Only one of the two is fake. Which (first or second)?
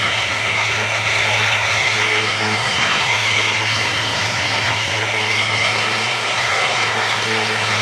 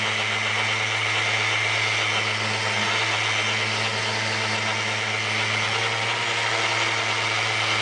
first